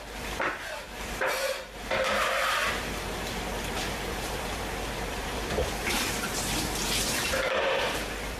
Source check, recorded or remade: remade